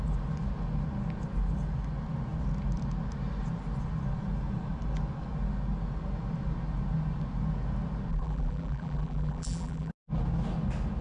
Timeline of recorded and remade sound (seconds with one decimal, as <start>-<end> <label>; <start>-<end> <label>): 0.0-8.1 recorded; 8.1-9.9 remade; 9.9-11.0 recorded